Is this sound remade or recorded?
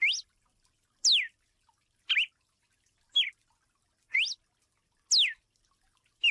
recorded